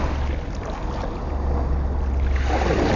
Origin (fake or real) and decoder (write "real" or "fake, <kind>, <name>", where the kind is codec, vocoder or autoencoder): real